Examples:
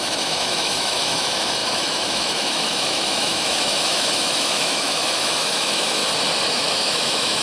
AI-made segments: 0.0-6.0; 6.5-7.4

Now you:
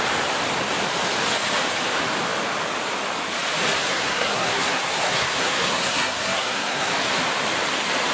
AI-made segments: 3.8-6.9

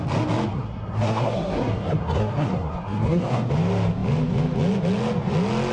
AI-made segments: 0.5-3.5

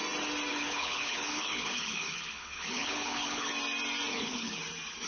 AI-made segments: 0.5-3.5; 4.1-4.6

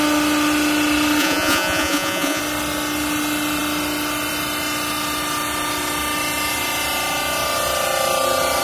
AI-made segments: 1.2-2.4

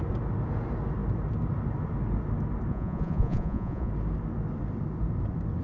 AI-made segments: 2.7-3.9

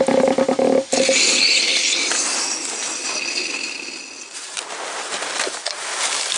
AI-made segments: none

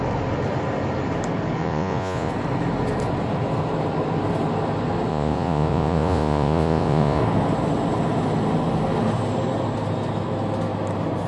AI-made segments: 1.6-2.3; 5.1-7.2